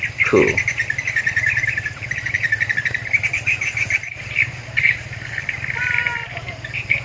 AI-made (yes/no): no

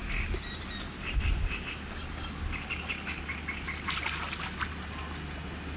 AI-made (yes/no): no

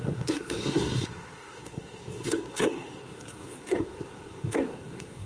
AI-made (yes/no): yes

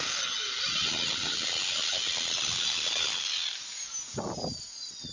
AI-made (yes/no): no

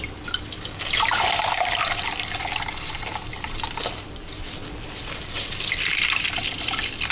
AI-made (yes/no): yes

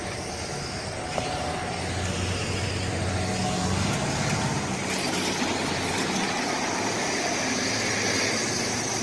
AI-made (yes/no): no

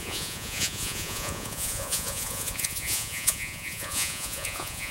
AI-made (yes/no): yes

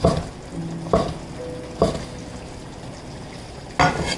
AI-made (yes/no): no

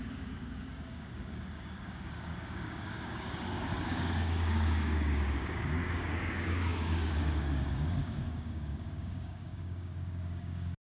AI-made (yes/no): yes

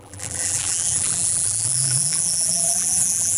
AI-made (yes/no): yes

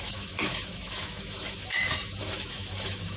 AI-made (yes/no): yes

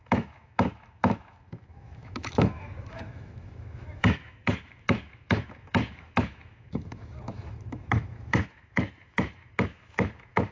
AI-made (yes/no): yes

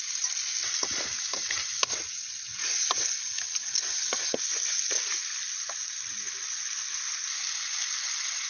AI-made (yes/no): no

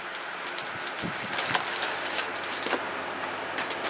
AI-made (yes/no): no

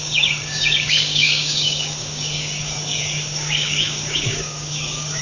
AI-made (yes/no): yes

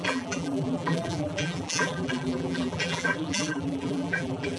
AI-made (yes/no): yes